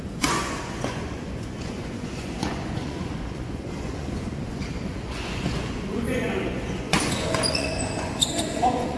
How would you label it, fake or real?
fake